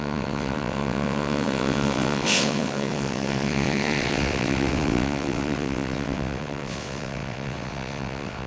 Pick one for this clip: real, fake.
fake